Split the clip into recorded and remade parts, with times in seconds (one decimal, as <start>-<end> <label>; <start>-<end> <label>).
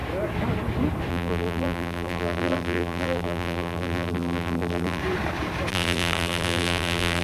0.0-1.1 recorded; 1.1-5.0 remade; 5.0-5.7 recorded; 5.7-7.2 remade